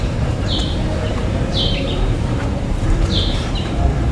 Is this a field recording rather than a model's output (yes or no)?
no